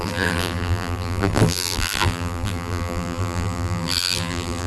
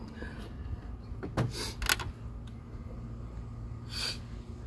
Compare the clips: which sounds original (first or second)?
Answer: second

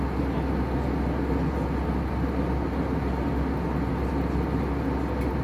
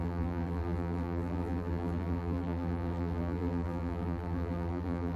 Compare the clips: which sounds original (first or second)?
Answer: first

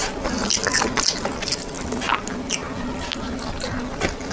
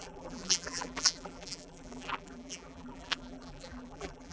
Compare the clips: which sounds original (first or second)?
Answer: first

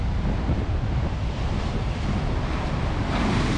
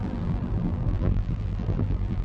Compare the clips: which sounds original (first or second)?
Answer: first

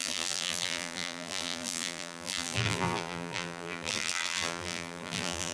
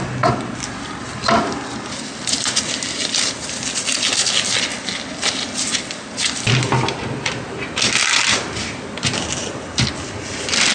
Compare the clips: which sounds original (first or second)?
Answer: second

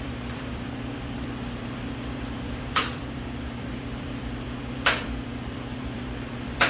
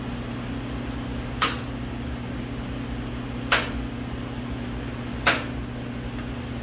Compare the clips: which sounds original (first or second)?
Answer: second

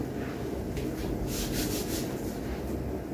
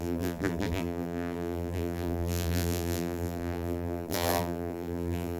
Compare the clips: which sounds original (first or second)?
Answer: first